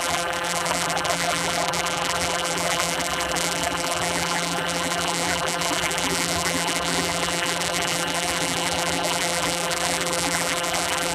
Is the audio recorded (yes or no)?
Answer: no